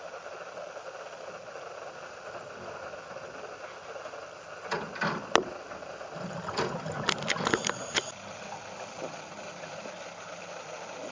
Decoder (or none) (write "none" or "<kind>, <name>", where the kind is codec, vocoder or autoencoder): none